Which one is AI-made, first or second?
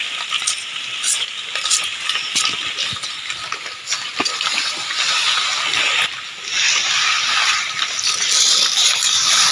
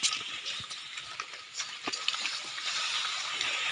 second